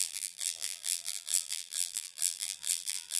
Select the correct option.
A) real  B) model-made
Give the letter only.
B